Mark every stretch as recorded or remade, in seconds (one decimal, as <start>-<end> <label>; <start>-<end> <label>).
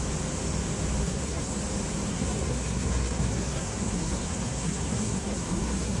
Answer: 0.0-1.0 recorded; 1.0-1.6 remade; 1.6-2.1 recorded; 2.1-6.0 remade